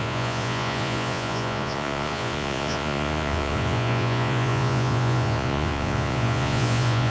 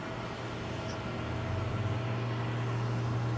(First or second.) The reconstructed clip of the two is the first